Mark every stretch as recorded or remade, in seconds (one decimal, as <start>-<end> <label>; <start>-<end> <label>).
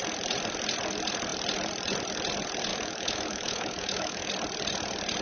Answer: 0.0-2.7 recorded; 2.7-4.3 remade; 4.3-5.2 recorded